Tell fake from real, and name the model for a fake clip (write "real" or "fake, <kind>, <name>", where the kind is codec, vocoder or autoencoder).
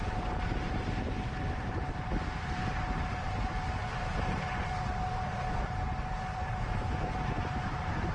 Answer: fake, vocoder, BigVGAN v2